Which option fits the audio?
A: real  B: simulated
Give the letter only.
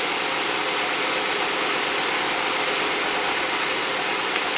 A